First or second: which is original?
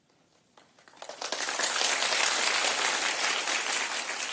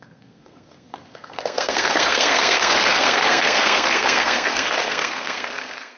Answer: first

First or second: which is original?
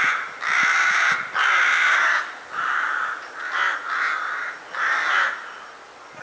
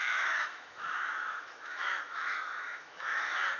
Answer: first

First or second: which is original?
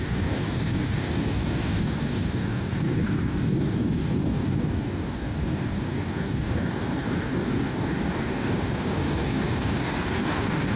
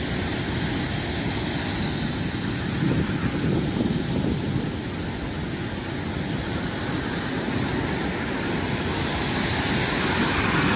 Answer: second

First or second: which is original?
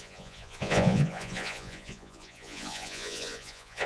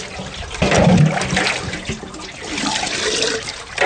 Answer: second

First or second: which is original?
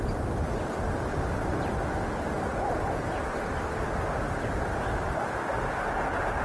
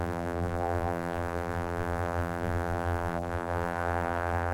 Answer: first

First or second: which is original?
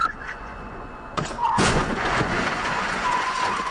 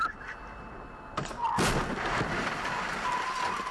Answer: second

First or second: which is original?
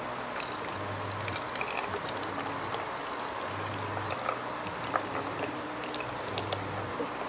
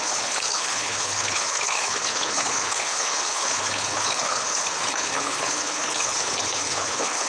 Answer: first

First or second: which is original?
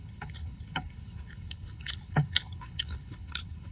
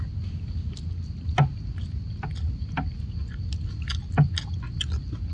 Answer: second